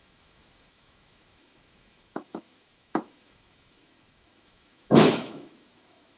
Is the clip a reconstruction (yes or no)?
yes